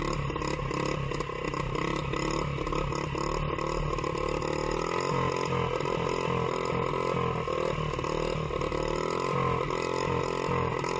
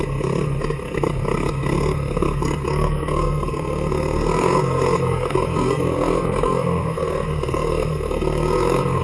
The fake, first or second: second